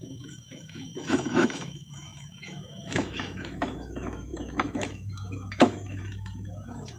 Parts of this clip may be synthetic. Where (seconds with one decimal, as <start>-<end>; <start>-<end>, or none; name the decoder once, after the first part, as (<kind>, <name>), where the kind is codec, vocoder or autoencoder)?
0.0-7.0 (autoencoder, DAC-VAE)